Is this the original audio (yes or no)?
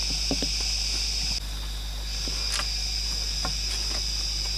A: yes